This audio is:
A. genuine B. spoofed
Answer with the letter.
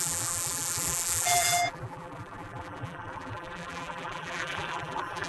B